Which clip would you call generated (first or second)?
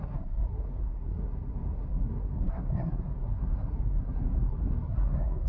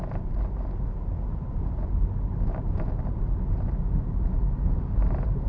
first